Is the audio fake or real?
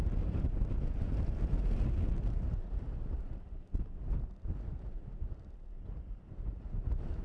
real